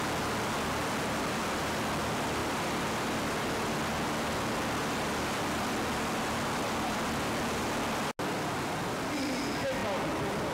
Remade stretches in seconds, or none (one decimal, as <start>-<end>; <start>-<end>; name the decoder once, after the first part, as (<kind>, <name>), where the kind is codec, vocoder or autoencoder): 2.4-3.3 (vocoder, BigVGAN v2)